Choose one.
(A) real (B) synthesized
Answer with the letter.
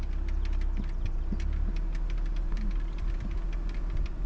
A